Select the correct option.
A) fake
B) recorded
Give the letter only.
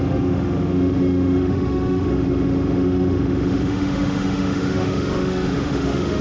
A